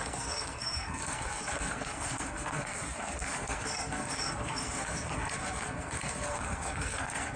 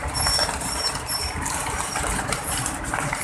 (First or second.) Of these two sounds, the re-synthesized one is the first